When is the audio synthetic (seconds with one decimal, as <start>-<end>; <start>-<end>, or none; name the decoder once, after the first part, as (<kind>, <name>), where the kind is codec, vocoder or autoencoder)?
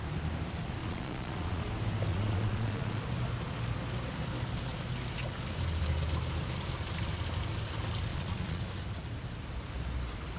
0.8-1.6 (vocoder, Vocos); 2.1-3.0; 8.1-8.6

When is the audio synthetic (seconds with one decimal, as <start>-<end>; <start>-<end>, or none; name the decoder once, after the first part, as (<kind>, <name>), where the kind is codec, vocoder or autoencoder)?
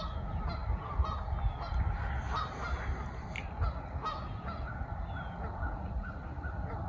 none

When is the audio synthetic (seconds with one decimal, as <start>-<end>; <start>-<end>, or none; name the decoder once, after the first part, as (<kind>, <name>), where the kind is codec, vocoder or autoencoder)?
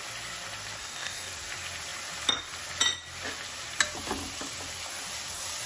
0.8-1.3 (codec, DAC)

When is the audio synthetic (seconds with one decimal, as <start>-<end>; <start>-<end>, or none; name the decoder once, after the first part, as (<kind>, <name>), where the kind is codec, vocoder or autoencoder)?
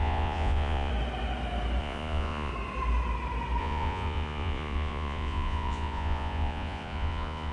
0.0-0.9 (vocoder, Vocos); 1.8-2.5; 3.6-7.5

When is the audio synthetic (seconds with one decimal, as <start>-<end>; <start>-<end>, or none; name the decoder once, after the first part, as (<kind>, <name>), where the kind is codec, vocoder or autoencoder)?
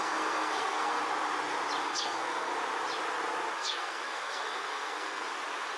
0.0-1.0 (codec, SNAC); 1.8-2.5; 3.5-5.3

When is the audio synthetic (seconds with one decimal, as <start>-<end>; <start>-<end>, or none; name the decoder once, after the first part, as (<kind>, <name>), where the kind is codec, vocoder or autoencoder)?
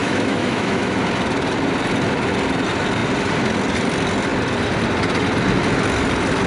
0.0-1.0 (autoencoder, DAC-VAE)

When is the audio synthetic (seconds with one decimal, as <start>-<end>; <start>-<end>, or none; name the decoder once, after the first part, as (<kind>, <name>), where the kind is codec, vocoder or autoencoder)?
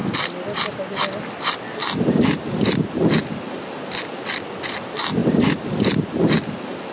5.2-6.4 (vocoder, BigVGAN v2)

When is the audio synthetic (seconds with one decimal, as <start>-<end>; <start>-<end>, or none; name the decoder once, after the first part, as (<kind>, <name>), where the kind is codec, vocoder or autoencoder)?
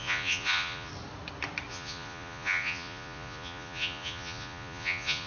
0.0-0.9 (vocoder, Vocos); 1.7-5.3